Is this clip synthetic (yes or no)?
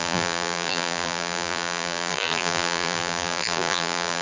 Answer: yes